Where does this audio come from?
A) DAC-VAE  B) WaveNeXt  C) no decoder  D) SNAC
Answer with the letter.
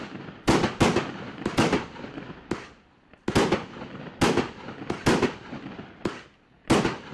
C